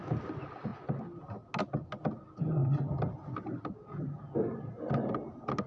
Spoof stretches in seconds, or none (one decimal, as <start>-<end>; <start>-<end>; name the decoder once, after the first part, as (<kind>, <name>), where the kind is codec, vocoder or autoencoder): none